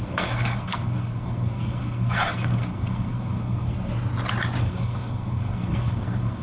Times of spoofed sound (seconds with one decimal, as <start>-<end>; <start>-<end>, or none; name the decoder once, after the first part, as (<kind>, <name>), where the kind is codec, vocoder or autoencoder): 0.0-3.9 (codec, SNAC); 4.6-6.4